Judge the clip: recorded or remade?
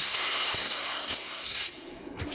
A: remade